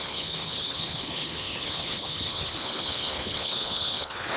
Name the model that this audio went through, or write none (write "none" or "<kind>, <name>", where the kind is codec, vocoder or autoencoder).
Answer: codec, HILCodec